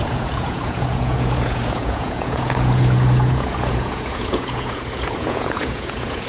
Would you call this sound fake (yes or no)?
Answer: yes